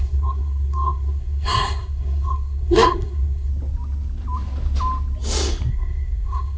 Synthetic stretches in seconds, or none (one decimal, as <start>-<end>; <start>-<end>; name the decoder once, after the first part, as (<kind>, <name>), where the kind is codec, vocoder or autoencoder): 0.0-3.5 (codec, SNAC); 5.7-6.6